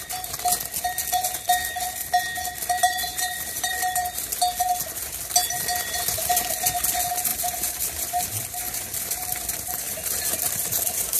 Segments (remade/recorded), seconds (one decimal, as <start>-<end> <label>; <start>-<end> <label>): 0.0-2.8 recorded; 2.8-3.7 remade; 3.7-7.3 recorded; 7.3-10.4 remade; 10.4-11.2 recorded